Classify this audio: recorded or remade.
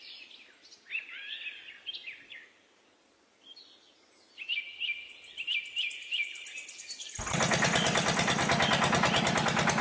recorded